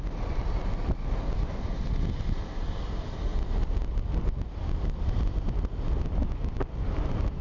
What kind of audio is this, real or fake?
real